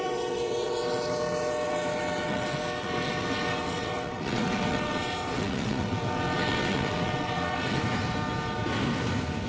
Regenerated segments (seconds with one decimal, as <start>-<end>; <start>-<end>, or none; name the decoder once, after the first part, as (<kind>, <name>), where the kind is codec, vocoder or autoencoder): 0.0-7.8 (vocoder, WaveNeXt)